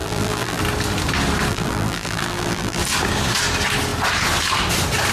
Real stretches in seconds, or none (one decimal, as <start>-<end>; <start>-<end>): 0.6-1.5; 2.8-5.1